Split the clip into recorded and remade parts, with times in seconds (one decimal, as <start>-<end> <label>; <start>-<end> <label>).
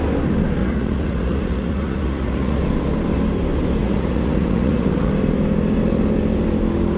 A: 0.0-0.6 recorded; 0.6-2.6 remade; 2.6-3.8 recorded; 3.8-5.1 remade; 5.1-7.0 recorded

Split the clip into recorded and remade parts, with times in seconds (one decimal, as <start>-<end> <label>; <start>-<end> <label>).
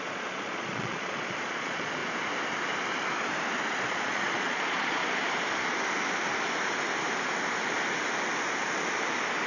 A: 0.0-2.0 remade; 2.0-3.9 recorded; 3.9-5.0 remade; 5.0-9.5 recorded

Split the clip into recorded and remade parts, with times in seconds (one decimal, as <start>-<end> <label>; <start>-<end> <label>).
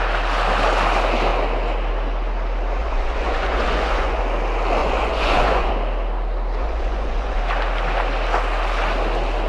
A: 0.0-2.8 recorded; 2.8-4.2 remade; 4.2-4.8 recorded; 4.8-5.7 remade; 5.7-6.6 recorded; 6.6-7.4 remade; 7.4-9.5 recorded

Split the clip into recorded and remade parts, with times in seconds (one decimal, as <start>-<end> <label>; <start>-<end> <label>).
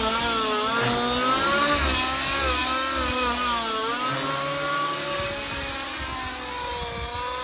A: 0.0-7.4 recorded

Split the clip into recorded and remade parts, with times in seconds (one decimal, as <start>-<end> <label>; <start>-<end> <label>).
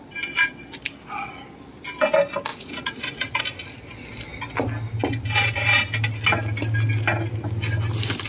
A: 0.0-2.5 recorded; 2.5-3.4 remade; 3.4-8.3 recorded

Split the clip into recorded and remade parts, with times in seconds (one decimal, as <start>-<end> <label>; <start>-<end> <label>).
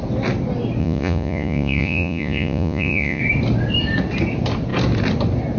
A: 0.0-0.8 recorded; 0.8-3.2 remade; 3.2-5.6 recorded